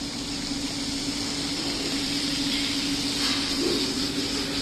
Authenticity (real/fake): real